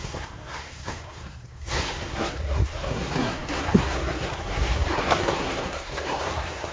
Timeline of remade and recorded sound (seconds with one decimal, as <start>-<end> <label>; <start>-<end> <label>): 0.0-6.7 remade